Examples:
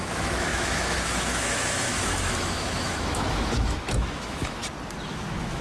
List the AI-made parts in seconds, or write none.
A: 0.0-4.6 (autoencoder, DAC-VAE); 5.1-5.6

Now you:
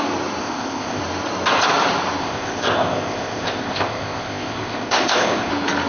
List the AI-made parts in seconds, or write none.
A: 0.4-1.0 (codec, ZipCodec); 2.2-5.5

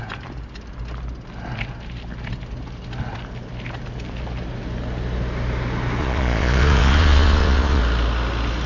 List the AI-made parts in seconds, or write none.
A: 6.0-7.8 (vocoder, Vocos)

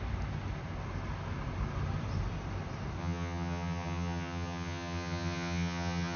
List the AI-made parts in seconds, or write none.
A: 3.0-6.2 (vocoder, HiFi-GAN)

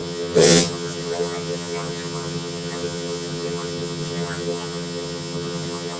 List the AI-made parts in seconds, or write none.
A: 0.0-6.0 (vocoder, HiFi-GAN)

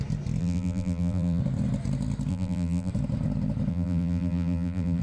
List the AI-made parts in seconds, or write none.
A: 0.4-1.4 (vocoder, BigVGAN v2); 2.3-2.9; 3.7-5.0